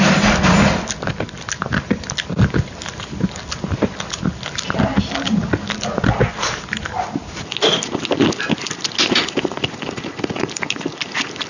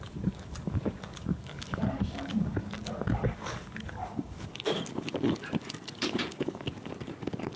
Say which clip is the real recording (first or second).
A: first